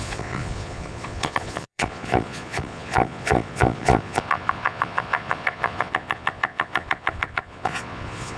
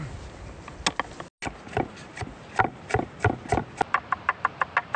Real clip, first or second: second